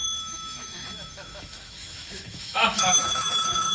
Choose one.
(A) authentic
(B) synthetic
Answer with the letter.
B